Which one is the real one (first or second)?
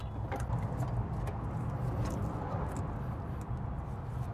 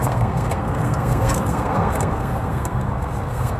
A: first